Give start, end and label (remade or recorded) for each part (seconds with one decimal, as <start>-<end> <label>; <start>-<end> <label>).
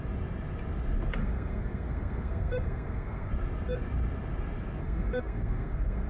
0.0-1.2 recorded; 1.2-3.3 remade; 3.3-4.8 recorded; 4.8-6.1 remade